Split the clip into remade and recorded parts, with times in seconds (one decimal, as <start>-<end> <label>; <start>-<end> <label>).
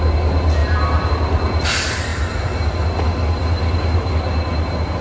0.0-0.6 recorded; 0.6-1.1 remade; 1.1-2.1 recorded; 2.1-2.7 remade; 2.7-3.4 recorded; 3.4-4.1 remade; 4.1-5.0 recorded